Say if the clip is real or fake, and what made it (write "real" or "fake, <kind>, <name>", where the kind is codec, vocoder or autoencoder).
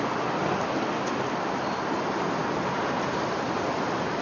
real